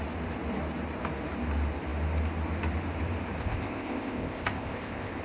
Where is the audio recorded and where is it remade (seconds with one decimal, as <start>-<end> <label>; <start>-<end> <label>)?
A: 0.0-3.4 recorded; 3.4-5.2 remade